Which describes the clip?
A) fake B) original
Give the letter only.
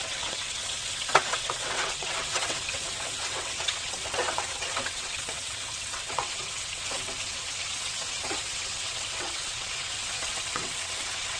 A